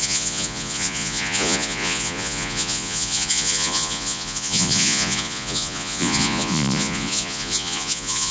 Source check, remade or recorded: remade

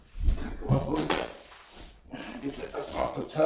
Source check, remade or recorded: remade